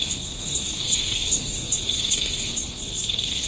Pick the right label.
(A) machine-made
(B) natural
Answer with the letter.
A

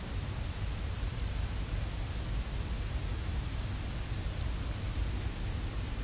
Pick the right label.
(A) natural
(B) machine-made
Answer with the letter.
A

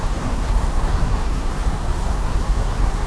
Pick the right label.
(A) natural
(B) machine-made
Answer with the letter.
B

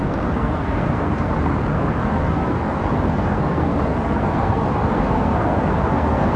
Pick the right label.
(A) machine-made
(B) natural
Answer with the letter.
A